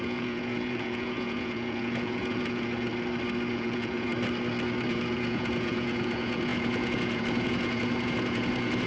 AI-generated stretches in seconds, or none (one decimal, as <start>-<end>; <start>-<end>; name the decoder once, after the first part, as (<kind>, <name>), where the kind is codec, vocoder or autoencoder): 0.0-2.9 (vocoder, Vocos); 3.5-4.1; 4.9-8.9